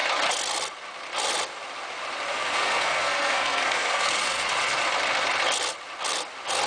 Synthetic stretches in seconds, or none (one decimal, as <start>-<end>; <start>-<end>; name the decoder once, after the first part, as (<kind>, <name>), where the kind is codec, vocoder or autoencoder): 2.3-4.5 (codec, SNAC)